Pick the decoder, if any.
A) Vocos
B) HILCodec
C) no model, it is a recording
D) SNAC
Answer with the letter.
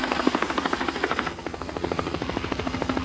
D